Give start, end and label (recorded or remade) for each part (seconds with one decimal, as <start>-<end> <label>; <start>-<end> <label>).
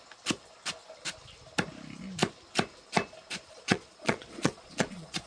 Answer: 0.0-3.5 recorded; 3.5-5.3 remade